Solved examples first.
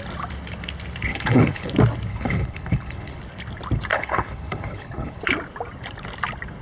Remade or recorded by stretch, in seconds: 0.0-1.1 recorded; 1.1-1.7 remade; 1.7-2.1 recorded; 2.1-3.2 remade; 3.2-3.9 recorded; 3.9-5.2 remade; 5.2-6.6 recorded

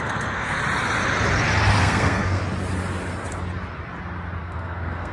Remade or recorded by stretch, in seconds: 0.0-0.6 remade; 0.6-1.8 recorded; 1.8-2.4 remade; 2.4-4.4 recorded; 4.4-5.1 remade